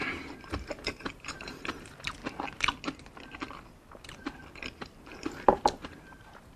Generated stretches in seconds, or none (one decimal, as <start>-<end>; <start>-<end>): 0.0-2.2; 4.8-6.6